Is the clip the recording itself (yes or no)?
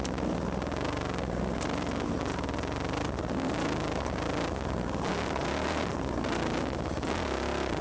yes